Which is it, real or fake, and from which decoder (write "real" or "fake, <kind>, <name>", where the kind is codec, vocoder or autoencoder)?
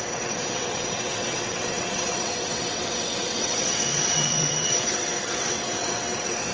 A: fake, vocoder, WaveNeXt